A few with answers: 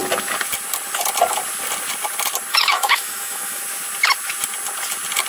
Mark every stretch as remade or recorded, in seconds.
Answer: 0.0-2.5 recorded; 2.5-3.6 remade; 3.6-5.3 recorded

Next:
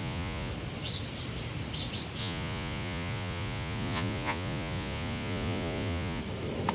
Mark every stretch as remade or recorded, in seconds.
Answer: 0.0-0.5 remade; 0.5-2.2 recorded; 2.2-6.2 remade; 6.2-6.7 recorded

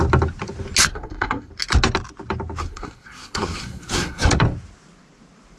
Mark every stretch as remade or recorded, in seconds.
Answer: 0.0-0.9 recorded; 0.9-1.5 remade; 1.5-2.6 recorded; 2.6-4.3 remade; 4.3-5.6 recorded

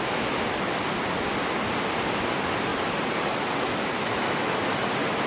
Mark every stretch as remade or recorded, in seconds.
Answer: 0.0-2.7 recorded; 2.7-3.5 remade; 3.5-5.3 recorded

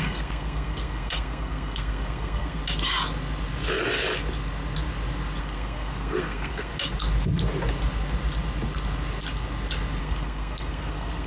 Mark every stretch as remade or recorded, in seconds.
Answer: 0.0-2.6 remade; 2.6-5.4 recorded; 5.4-6.7 remade; 6.7-10.0 recorded; 10.0-11.3 remade

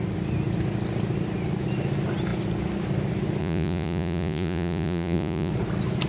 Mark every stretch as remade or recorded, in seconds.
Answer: 0.0-3.4 recorded; 3.4-5.5 remade; 5.5-6.1 recorded

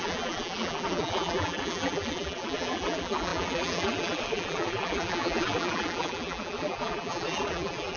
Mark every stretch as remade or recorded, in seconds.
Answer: 0.0-8.0 remade

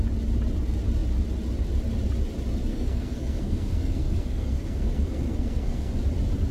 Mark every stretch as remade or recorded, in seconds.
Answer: 0.0-2.7 recorded; 2.7-5.9 remade; 5.9-6.5 recorded